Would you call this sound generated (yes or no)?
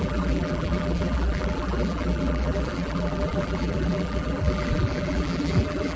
yes